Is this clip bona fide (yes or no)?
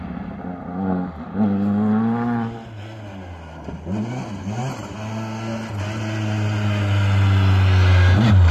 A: yes